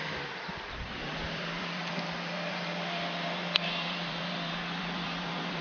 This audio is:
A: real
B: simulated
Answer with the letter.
B